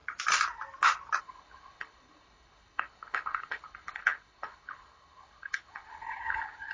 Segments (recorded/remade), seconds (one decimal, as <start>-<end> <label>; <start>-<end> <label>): 0.0-1.2 recorded; 1.2-6.7 remade